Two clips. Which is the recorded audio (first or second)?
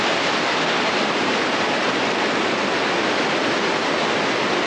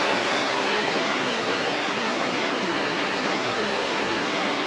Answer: first